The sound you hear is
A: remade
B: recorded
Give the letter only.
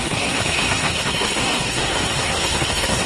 A